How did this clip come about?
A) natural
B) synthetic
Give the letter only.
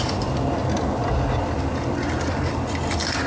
A